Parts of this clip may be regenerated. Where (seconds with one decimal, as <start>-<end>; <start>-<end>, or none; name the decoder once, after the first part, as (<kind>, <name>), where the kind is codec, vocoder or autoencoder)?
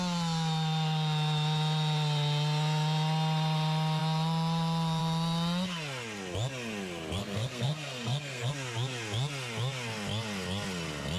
7.2-8.5 (codec, SNAC)